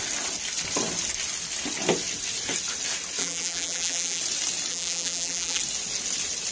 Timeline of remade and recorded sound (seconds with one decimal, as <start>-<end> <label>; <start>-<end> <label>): 0.0-3.2 recorded; 3.2-4.2 remade; 4.2-4.7 recorded; 4.7-5.6 remade; 5.6-6.5 recorded